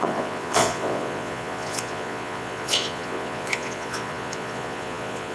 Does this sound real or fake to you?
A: fake